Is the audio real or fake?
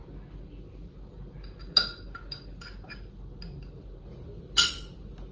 real